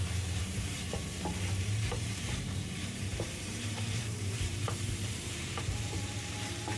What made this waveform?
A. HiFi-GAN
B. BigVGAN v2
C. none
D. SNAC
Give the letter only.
B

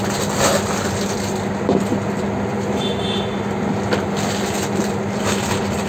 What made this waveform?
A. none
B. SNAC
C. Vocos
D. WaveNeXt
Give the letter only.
A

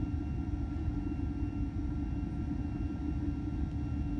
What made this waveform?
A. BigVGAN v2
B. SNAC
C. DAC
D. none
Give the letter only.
D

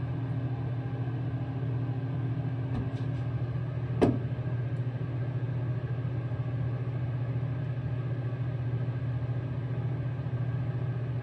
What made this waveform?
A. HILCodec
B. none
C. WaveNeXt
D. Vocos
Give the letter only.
B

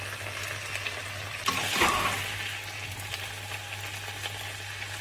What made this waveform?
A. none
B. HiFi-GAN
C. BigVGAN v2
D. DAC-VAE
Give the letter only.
A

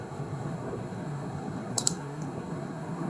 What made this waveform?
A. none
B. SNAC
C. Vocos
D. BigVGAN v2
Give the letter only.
B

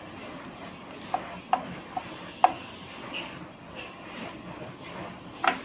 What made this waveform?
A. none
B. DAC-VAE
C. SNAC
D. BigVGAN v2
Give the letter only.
A